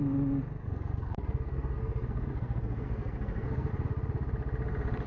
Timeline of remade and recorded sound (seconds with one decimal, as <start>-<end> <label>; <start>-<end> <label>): 0.0-0.6 recorded; 0.6-3.7 remade; 3.7-5.1 recorded